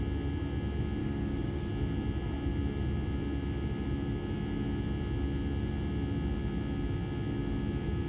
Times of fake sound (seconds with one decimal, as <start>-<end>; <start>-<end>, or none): 1.0-1.7